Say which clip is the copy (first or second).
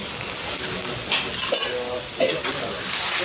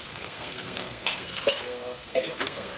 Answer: second